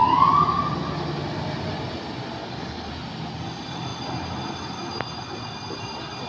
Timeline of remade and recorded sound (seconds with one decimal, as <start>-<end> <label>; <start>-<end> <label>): 0.0-2.4 recorded; 2.4-2.9 remade; 2.9-6.3 recorded